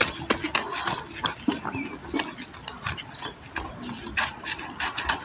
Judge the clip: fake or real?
real